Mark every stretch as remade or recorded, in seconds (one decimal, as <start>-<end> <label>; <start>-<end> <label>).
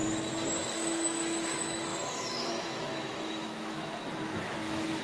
0.0-0.6 recorded; 0.6-5.0 remade